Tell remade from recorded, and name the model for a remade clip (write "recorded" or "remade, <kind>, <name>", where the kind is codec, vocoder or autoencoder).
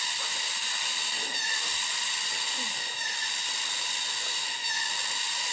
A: recorded